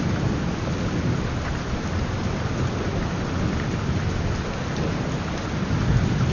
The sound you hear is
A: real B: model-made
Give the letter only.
A